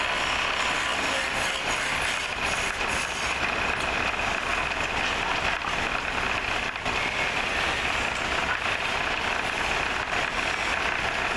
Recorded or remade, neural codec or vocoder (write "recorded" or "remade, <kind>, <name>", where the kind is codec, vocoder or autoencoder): recorded